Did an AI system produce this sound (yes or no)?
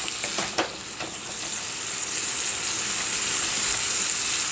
no